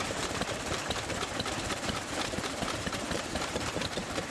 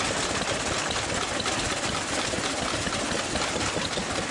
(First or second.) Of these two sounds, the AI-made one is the first